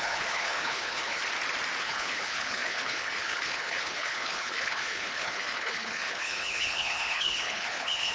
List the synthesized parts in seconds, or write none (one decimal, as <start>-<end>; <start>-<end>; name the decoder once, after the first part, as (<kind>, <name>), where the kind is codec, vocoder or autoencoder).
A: 0.0-1.2 (codec, HILCodec); 1.8-8.1